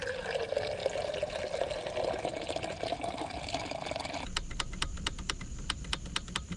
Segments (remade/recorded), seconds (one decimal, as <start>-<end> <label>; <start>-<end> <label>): 0.0-0.8 remade; 0.8-2.8 recorded; 2.8-6.6 remade